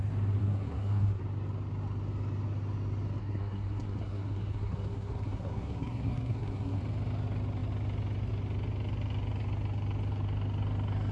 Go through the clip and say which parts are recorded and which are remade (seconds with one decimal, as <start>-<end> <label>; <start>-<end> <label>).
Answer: 0.0-0.4 recorded; 0.4-1.2 remade; 1.2-3.2 recorded; 3.2-6.8 remade; 6.8-11.1 recorded